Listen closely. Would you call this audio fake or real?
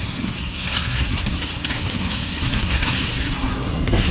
fake